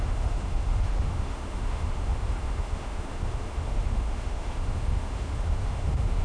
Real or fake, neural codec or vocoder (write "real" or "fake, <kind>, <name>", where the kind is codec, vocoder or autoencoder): fake, autoencoder, DAC-VAE